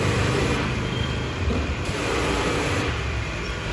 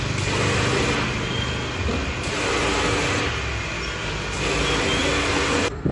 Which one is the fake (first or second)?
first